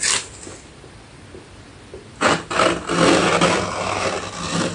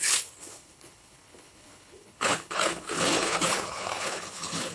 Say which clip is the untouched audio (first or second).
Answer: first